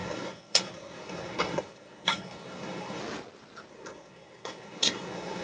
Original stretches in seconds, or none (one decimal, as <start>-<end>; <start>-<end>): 3.0-3.7